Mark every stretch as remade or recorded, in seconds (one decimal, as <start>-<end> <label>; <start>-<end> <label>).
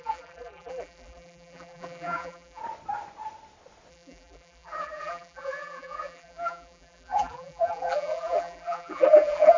0.0-2.6 remade; 2.6-3.9 recorded; 3.9-9.6 remade